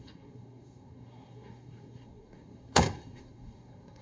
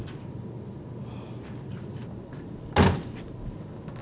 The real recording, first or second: second